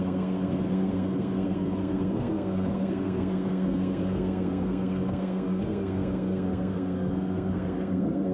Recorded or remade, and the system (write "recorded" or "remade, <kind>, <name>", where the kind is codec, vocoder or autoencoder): remade, codec, SNAC